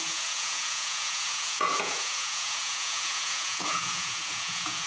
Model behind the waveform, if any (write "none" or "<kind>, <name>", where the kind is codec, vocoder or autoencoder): vocoder, Vocos